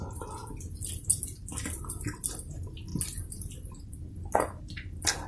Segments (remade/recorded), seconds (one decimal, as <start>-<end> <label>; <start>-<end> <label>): 0.0-5.3 recorded